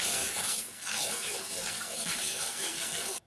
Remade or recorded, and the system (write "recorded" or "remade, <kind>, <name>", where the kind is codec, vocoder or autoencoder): remade, codec, SNAC